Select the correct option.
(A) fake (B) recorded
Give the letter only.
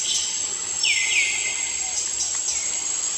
B